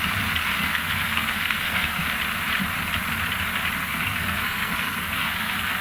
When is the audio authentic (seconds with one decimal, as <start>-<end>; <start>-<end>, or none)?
0.0-0.6; 2.0-3.8